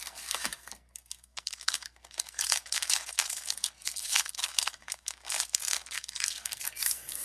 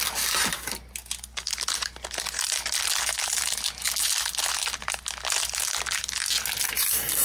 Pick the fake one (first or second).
first